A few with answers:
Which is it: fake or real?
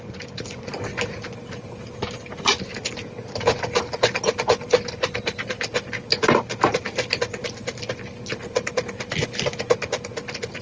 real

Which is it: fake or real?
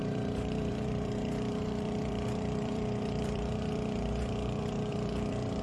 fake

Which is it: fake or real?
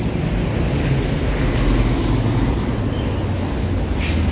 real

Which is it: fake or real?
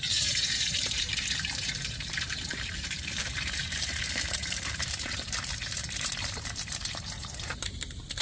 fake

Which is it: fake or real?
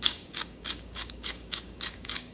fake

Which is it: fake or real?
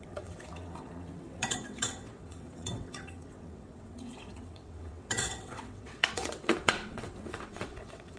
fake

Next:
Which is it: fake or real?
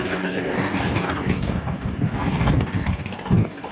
fake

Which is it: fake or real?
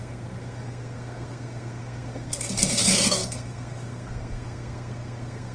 fake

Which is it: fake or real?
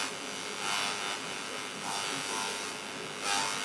real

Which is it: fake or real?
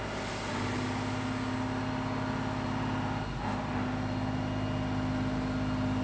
real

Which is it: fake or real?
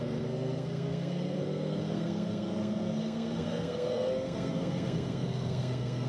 fake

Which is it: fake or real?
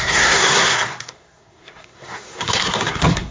fake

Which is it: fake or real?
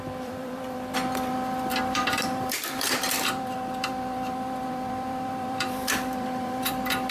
fake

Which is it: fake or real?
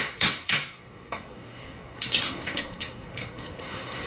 fake